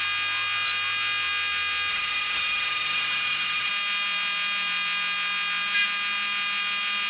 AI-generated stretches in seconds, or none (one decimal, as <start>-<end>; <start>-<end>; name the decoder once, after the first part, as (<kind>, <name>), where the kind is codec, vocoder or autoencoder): 1.9-3.7 (autoencoder, DAC-VAE)